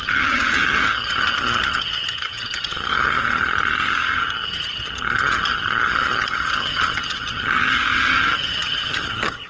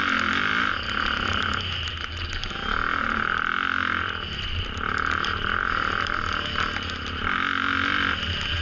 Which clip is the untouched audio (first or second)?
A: second